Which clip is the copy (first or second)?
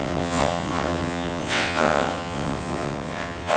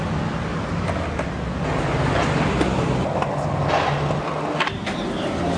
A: first